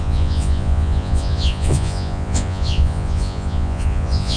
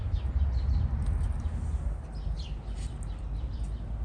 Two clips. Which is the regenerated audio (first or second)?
first